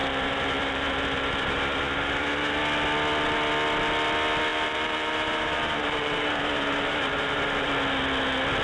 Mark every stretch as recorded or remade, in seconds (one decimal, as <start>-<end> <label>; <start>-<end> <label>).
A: 0.0-2.6 remade; 2.6-4.5 recorded; 4.5-7.7 remade; 7.7-8.6 recorded